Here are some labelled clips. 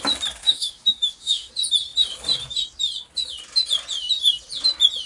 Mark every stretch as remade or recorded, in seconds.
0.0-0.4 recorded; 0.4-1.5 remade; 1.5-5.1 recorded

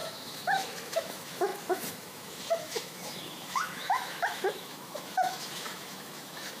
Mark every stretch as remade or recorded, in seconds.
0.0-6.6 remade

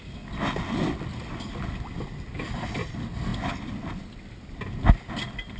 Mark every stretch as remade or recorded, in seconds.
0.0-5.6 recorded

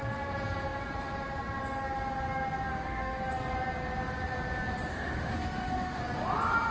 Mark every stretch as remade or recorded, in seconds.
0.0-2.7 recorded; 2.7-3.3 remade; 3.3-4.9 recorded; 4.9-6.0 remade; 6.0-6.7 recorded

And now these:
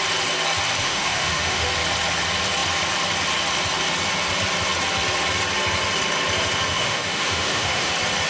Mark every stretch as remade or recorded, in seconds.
0.0-0.8 recorded; 0.8-1.7 remade; 1.7-6.7 recorded; 6.7-7.9 remade; 7.9-8.3 recorded

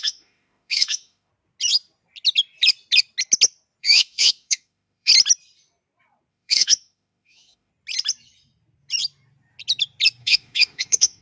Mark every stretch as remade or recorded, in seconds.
0.0-1.3 remade; 1.3-3.8 recorded; 3.8-5.1 remade; 5.1-6.3 recorded; 6.3-7.7 remade; 7.7-10.2 recorded; 10.2-11.2 remade

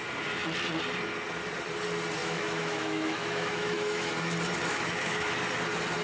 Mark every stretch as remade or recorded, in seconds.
0.0-2.2 recorded; 2.2-4.1 remade; 4.1-4.7 recorded; 4.7-5.3 remade; 5.3-6.0 recorded

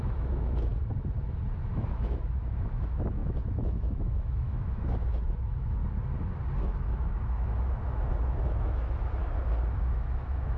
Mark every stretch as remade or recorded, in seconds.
0.0-0.7 remade; 0.7-1.6 recorded; 1.6-5.8 remade; 5.8-6.6 recorded; 6.6-9.2 remade; 9.2-9.7 recorded; 9.7-10.6 remade